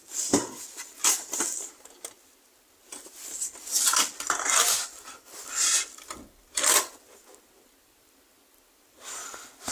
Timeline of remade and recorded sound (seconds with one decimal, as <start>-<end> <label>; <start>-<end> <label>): 0.0-9.7 recorded